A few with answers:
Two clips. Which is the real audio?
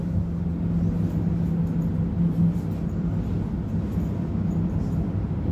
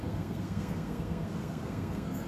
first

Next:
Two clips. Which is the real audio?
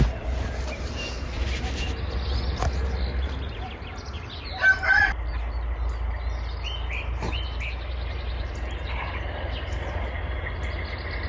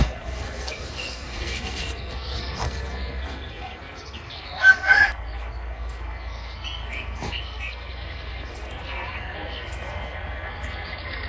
first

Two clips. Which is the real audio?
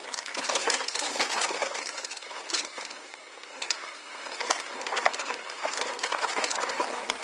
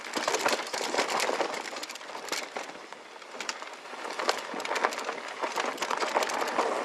second